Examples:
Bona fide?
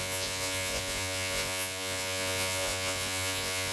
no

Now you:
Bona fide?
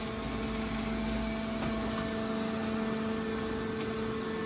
yes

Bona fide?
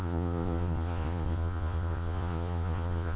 no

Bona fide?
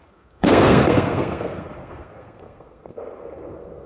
no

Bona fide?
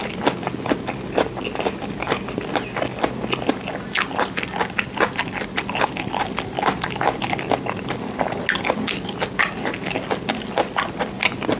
yes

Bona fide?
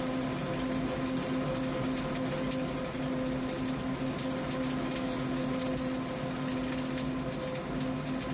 yes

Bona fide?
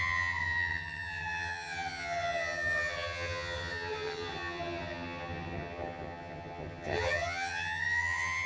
no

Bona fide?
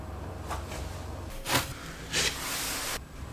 yes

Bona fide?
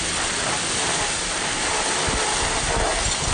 yes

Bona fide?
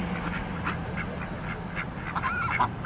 yes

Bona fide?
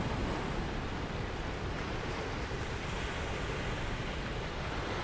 yes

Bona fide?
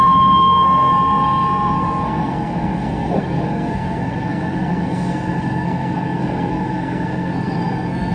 no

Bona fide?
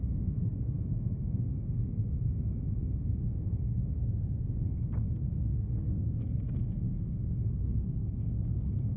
no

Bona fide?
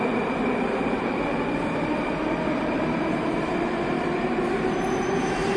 no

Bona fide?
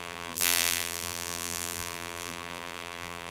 no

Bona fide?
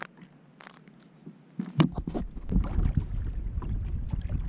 yes